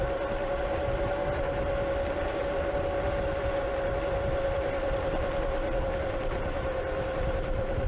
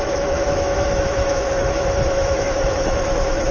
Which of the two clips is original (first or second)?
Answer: first